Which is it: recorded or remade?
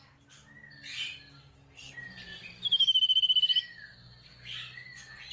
recorded